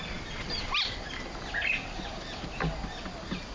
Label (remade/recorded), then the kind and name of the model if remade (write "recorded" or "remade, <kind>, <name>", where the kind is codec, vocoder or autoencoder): recorded